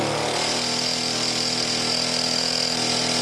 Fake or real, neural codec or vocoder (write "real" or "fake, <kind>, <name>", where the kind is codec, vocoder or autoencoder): real